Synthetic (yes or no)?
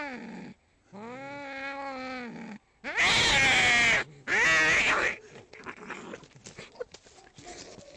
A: no